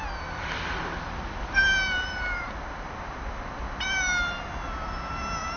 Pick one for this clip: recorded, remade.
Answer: remade